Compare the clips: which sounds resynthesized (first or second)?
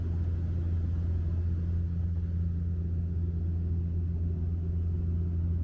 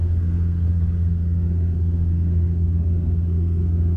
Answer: second